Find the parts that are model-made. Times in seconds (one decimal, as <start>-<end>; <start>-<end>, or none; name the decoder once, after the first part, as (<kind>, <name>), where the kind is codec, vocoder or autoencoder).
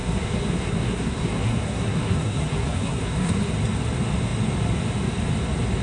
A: 0.0-3.5 (codec, SNAC)